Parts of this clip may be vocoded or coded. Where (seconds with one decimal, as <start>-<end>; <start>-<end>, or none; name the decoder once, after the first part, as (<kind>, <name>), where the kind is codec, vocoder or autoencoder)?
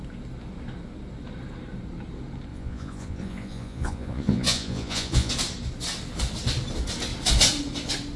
2.5-5.3 (vocoder, Vocos)